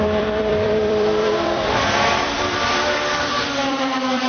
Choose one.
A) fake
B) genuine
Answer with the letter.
A